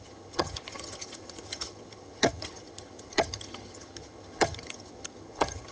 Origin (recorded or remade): remade